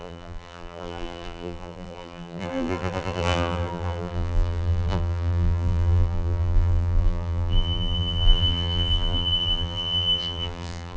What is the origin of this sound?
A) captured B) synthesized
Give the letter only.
B